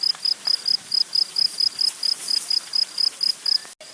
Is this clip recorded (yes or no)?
yes